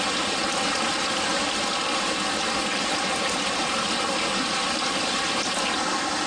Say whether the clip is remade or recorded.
recorded